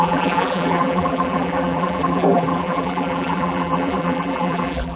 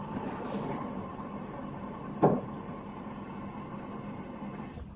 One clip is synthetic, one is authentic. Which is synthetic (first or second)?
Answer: first